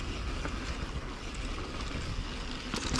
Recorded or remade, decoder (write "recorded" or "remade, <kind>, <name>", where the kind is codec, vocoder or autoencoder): recorded